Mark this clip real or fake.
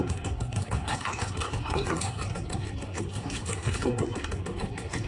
fake